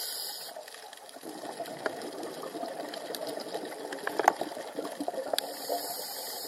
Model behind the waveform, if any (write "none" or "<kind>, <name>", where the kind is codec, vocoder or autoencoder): none